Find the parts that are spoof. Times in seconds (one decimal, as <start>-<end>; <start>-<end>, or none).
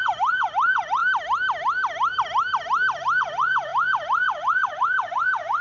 0.0-1.0; 3.2-5.6